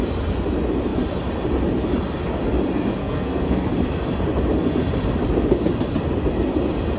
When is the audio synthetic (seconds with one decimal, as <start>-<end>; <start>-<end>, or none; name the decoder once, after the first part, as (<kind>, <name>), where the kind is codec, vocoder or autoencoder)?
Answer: 3.0-3.7 (codec, SNAC)